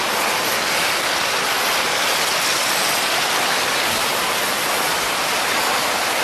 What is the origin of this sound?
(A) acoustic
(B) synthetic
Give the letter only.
A